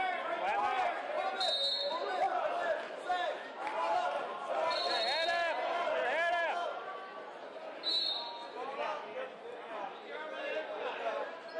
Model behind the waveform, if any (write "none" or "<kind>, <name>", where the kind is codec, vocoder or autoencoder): none